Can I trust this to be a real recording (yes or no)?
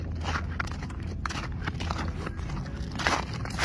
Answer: yes